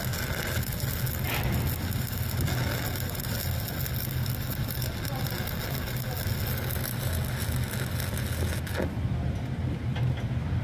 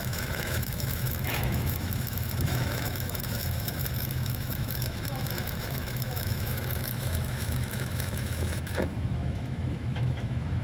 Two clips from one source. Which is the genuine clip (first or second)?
first